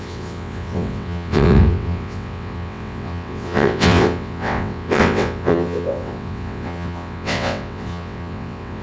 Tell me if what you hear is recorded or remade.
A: remade